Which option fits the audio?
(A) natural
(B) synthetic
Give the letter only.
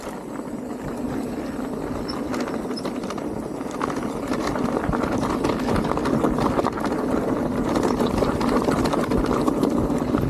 A